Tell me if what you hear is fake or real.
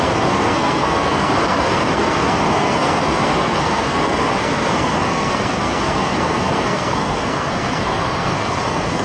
fake